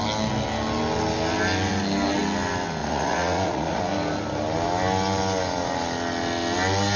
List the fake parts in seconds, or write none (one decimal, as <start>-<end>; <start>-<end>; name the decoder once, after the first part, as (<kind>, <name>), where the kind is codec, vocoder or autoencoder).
2.8-3.8 (vocoder, Vocos)